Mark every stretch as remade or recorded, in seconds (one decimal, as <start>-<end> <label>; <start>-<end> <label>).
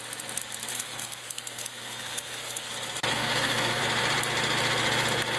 0.0-0.7 recorded; 0.7-2.7 remade; 2.7-3.1 recorded; 3.1-3.8 remade; 3.8-5.4 recorded